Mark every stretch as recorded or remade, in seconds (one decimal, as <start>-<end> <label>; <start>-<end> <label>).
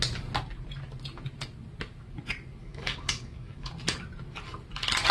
0.0-2.6 recorded; 2.6-3.7 remade; 3.7-5.1 recorded